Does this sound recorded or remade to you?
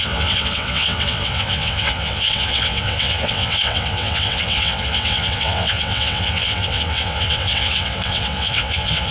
remade